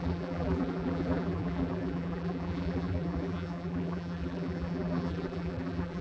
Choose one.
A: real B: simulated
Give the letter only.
B